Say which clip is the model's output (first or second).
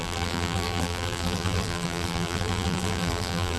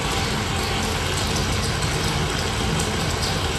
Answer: first